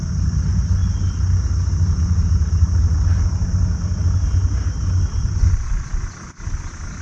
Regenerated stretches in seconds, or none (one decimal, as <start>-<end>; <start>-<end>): none